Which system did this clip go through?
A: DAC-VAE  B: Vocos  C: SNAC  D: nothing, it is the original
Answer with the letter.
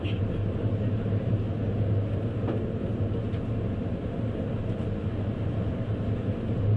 D